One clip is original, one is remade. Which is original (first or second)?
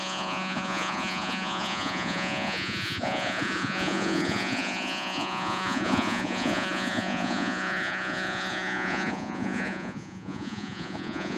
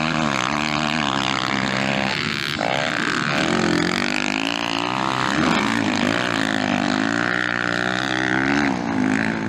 second